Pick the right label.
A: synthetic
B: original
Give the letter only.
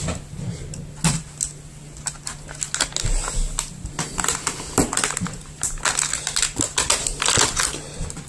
B